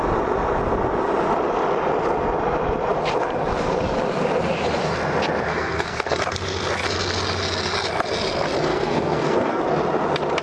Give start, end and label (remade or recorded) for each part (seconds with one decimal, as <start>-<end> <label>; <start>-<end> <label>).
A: 0.0-5.5 recorded; 5.5-6.2 remade; 6.2-8.7 recorded; 8.7-9.6 remade; 9.6-10.4 recorded